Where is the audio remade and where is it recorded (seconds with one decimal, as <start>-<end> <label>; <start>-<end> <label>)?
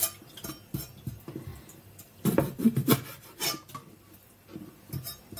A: 0.0-5.4 recorded